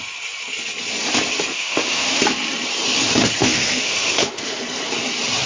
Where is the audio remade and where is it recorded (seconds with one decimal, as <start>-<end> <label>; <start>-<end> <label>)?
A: 0.0-1.5 recorded; 1.5-2.2 remade; 2.2-3.4 recorded; 3.4-4.6 remade; 4.6-5.5 recorded